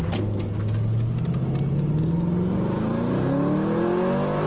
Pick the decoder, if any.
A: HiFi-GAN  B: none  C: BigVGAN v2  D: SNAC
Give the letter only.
B